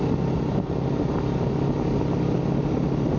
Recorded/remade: recorded